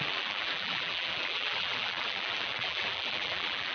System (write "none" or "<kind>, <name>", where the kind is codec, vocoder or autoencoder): vocoder, BigVGAN v2